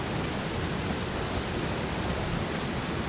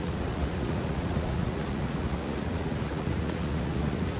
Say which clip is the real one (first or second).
first